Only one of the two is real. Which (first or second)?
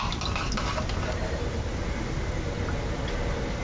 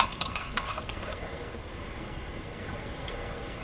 first